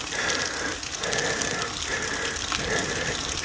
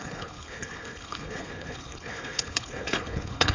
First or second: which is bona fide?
first